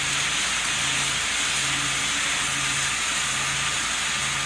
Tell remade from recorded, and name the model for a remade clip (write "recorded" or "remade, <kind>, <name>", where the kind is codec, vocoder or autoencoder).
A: recorded